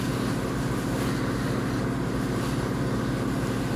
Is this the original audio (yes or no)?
yes